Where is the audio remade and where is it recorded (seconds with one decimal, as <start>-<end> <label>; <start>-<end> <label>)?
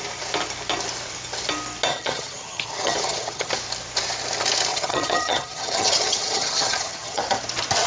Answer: 0.0-1.9 recorded; 1.9-3.5 remade; 3.5-4.7 recorded; 4.7-7.2 remade; 7.2-7.9 recorded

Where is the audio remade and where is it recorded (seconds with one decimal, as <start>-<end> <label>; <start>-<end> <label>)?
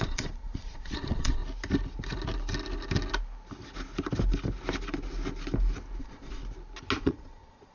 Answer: 0.0-1.4 remade; 1.4-6.0 recorded; 6.0-6.4 remade; 6.4-7.0 recorded; 7.0-7.7 remade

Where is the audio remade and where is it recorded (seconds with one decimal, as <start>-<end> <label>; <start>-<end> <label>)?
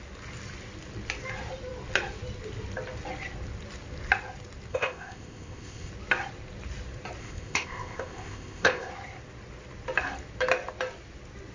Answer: 0.0-4.7 recorded; 4.7-5.9 remade; 5.9-7.2 recorded; 7.2-8.9 remade; 8.9-11.5 recorded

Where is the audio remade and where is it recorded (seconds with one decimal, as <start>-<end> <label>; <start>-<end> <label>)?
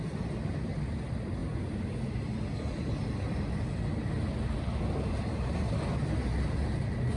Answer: 0.0-7.2 recorded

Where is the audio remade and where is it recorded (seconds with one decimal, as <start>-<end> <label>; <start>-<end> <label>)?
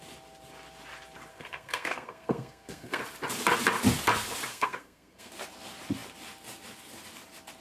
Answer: 0.0-1.3 recorded; 1.3-3.0 remade; 3.0-4.5 recorded; 4.5-5.3 remade; 5.3-7.6 recorded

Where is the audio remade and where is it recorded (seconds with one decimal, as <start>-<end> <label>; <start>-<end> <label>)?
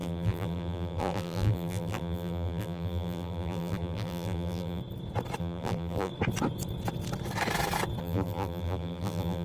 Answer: 0.0-4.8 remade; 4.8-5.4 recorded; 5.4-6.1 remade; 6.1-8.0 recorded; 8.0-9.4 remade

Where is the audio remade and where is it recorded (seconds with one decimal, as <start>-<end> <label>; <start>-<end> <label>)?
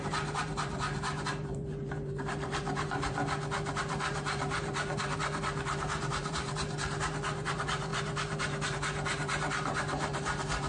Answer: 0.0-3.2 remade; 3.2-3.8 recorded; 3.8-10.7 remade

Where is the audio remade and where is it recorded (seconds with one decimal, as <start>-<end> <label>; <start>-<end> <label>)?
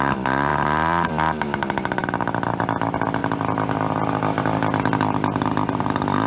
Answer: 0.0-6.3 recorded